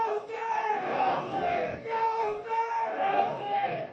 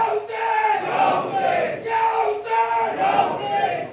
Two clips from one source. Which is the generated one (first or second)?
first